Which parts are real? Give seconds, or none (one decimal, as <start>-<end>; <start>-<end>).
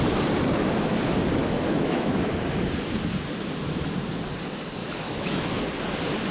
0.0-1.4; 2.3-4.8; 5.6-6.3